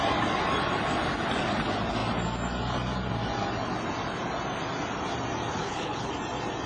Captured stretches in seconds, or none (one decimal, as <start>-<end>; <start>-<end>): 0.0-5.5; 6.1-6.7